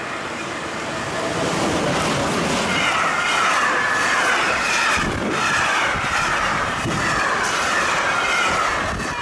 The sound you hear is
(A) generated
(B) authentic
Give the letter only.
B